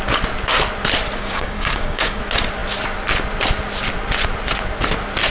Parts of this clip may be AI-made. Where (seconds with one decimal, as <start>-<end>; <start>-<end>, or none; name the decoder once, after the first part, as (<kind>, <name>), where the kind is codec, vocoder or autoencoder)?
1.2-2.2 (codec, DAC)